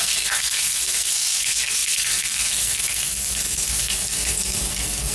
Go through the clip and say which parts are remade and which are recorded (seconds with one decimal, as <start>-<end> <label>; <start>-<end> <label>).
0.0-5.1 remade

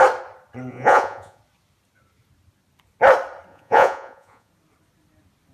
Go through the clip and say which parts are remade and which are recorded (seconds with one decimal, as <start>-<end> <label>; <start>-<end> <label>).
0.0-0.7 recorded; 0.7-1.4 remade; 1.4-3.5 recorded; 3.5-4.5 remade; 4.5-5.5 recorded

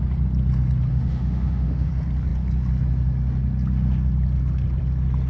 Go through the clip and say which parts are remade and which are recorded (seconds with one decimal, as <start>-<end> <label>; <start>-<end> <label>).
0.0-0.9 recorded; 0.9-1.9 remade; 1.9-5.3 recorded

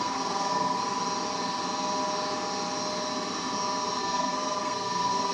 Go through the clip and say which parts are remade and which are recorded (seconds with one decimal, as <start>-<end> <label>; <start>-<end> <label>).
0.0-0.8 remade; 0.8-4.0 recorded; 4.0-5.3 remade